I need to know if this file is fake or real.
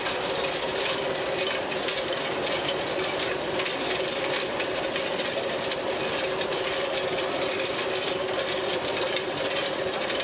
fake